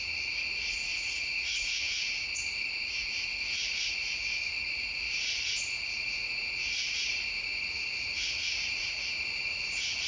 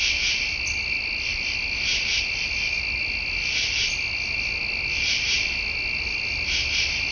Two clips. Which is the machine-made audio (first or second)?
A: first